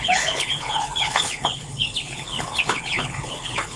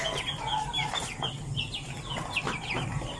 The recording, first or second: second